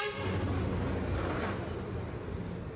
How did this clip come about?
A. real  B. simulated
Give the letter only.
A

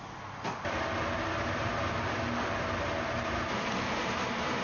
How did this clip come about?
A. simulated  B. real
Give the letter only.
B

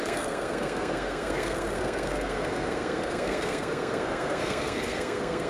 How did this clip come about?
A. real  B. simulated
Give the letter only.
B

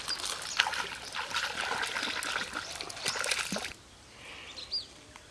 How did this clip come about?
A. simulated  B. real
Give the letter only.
B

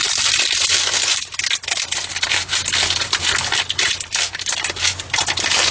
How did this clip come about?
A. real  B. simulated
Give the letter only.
A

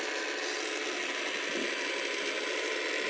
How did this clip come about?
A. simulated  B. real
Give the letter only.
B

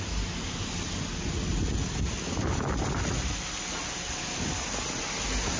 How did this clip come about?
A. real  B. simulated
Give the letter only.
A